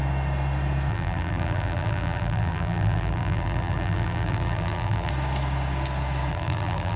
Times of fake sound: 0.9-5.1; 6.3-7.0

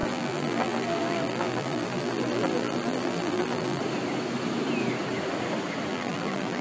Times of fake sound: 0.0-3.8; 5.9-6.6